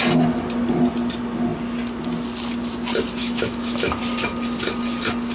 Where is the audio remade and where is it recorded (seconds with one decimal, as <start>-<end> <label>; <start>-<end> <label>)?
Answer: 0.0-3.2 recorded; 3.2-4.0 remade; 4.0-5.3 recorded